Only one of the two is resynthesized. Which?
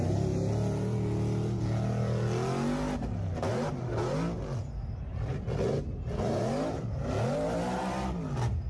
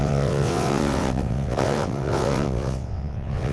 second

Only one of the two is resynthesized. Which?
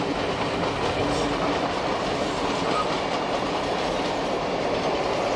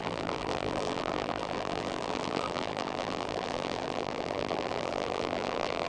second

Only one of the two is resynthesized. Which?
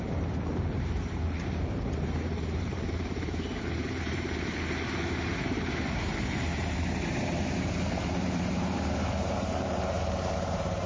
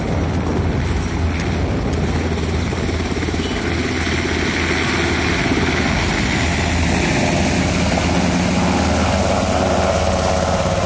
first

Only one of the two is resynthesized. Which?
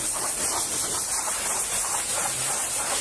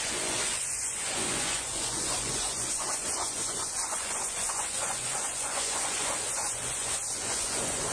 second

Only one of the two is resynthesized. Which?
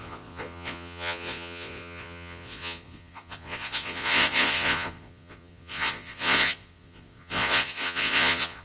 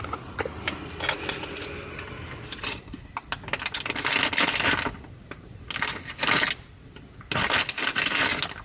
first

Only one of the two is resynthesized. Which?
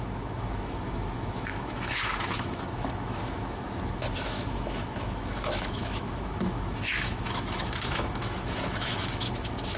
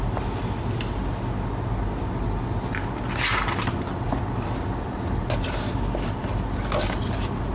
first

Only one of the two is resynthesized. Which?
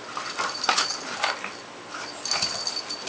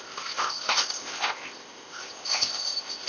second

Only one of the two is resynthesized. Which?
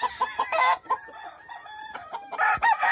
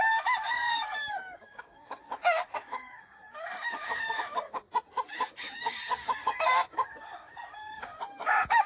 second